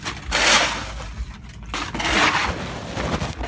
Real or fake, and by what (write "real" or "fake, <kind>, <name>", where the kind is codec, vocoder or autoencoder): real